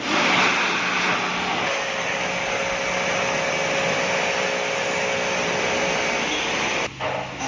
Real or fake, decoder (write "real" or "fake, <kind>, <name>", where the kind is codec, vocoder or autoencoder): real